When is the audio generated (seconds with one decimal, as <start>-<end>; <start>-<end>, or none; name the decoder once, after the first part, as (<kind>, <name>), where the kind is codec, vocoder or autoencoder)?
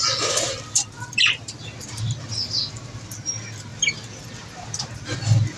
none